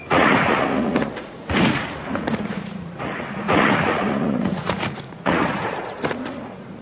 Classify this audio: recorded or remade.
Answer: remade